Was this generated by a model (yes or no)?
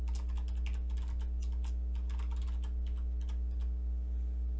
no